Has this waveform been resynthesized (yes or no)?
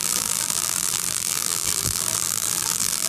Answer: yes